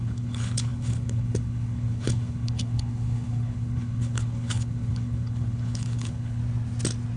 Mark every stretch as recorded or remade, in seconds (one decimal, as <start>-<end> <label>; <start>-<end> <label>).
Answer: 0.0-6.4 remade; 6.4-7.2 recorded